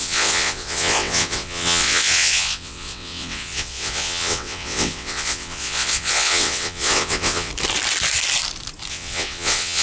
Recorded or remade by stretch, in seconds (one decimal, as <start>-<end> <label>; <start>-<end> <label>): 0.0-7.5 remade; 7.5-8.9 recorded; 8.9-9.8 remade